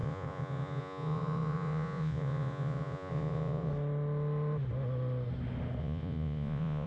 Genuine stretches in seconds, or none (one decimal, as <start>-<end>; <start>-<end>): 3.7-5.8